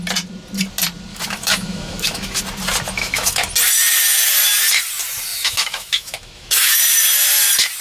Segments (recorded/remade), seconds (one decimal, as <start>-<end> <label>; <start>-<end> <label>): 0.0-1.1 recorded; 1.1-2.4 remade; 2.4-3.0 recorded; 3.0-3.5 remade; 3.5-5.3 recorded; 5.3-6.8 remade; 6.8-7.8 recorded